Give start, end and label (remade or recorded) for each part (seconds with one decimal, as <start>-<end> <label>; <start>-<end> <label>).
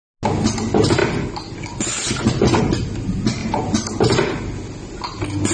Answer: 0.0-5.5 recorded